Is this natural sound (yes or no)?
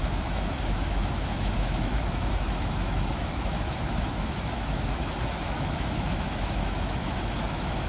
no